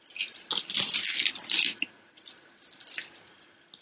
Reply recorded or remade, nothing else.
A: recorded